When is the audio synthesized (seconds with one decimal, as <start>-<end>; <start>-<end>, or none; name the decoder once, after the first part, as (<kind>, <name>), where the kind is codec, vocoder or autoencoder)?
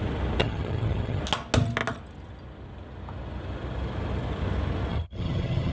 0.4-1.2 (vocoder, HiFi-GAN); 4.9-5.7